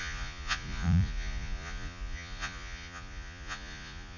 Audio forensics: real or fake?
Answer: fake